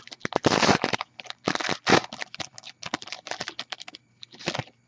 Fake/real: real